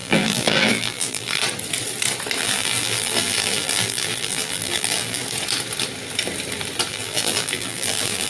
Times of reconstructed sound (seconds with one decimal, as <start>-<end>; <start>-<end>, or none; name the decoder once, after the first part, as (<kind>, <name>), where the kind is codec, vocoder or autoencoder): 0.0-1.4 (vocoder, BigVGAN v2); 2.4-5.2; 6.9-8.3